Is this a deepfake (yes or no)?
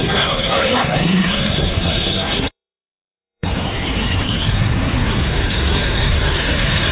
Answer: yes